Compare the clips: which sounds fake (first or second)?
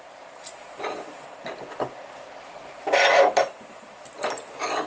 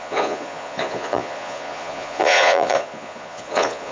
second